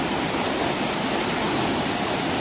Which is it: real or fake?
real